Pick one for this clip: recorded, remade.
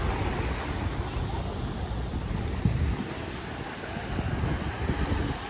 recorded